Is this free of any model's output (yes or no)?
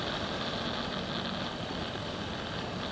yes